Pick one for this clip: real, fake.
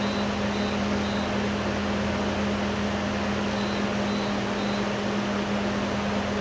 real